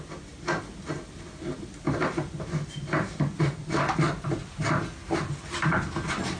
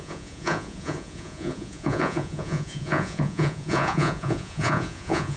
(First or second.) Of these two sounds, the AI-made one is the second